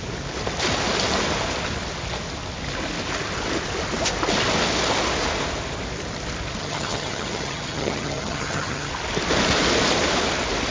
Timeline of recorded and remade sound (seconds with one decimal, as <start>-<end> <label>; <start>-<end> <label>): 0.0-6.6 recorded; 6.6-8.9 remade; 8.9-10.7 recorded